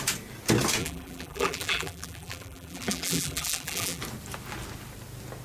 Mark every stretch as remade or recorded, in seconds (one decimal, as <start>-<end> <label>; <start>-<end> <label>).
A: 0.0-0.8 recorded; 0.8-4.0 remade; 4.0-5.4 recorded